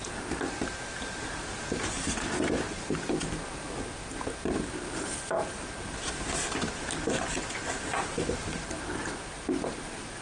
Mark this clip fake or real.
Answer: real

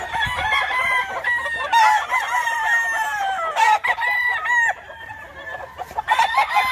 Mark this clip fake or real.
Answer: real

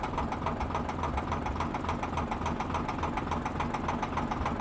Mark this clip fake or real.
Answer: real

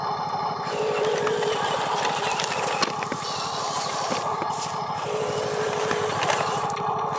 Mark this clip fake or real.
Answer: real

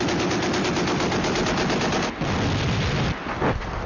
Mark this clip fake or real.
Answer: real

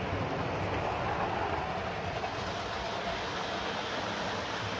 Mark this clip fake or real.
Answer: real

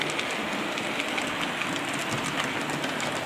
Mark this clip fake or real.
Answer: real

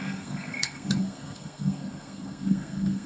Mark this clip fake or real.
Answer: fake